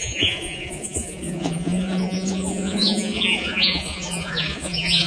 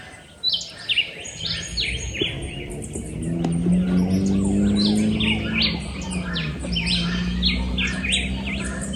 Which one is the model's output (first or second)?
first